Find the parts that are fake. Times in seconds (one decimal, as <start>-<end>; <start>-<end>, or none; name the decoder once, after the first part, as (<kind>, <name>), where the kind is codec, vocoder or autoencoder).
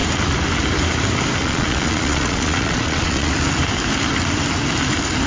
1.4-3.3 (vocoder, Vocos)